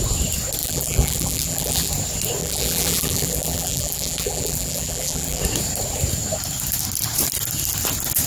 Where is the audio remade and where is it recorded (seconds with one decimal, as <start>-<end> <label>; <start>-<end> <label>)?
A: 0.0-0.6 recorded; 0.6-1.9 remade; 1.9-2.4 recorded; 2.4-5.4 remade; 5.4-8.3 recorded